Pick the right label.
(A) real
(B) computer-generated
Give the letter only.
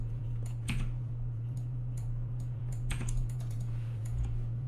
B